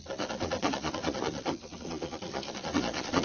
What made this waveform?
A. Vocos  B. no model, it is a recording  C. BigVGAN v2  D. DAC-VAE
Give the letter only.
A